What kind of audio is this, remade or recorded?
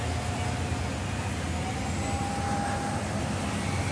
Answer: recorded